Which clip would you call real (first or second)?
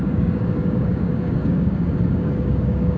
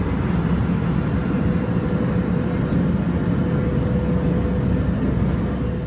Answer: second